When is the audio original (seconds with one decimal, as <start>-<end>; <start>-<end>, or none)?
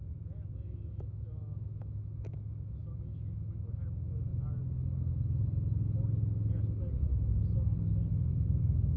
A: 4.3-8.1